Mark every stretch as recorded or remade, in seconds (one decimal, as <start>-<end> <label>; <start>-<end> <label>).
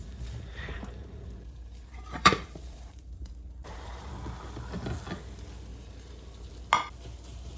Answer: 0.0-4.1 remade; 4.1-5.7 recorded; 5.7-6.5 remade; 6.5-7.6 recorded